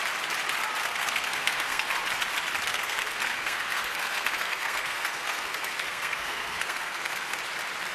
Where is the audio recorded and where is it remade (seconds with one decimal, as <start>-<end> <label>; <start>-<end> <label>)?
0.0-0.8 recorded; 0.8-1.9 remade; 1.9-2.7 recorded; 2.7-7.4 remade; 7.4-7.9 recorded